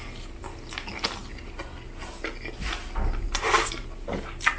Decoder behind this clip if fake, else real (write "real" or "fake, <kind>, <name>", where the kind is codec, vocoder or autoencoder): real